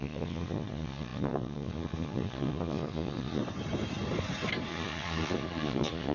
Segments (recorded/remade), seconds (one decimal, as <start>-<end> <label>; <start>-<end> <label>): 0.0-3.4 remade; 3.4-4.7 recorded; 4.7-6.1 remade